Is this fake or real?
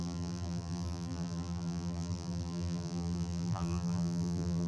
fake